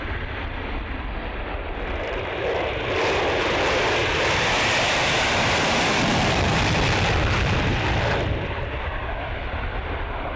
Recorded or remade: remade